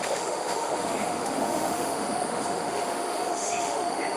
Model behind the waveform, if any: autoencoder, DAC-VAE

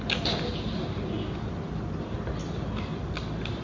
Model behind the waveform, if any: none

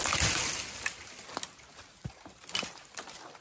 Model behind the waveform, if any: none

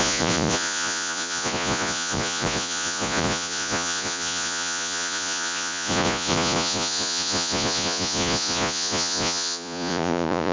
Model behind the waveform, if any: vocoder, Vocos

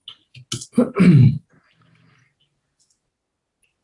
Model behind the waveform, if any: none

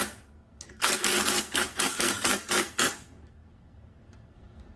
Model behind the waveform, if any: codec, SNAC